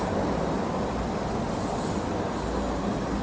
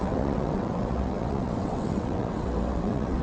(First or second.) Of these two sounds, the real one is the first